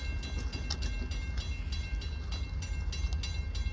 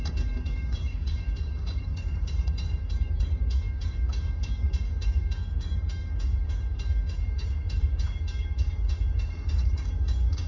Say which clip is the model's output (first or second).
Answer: second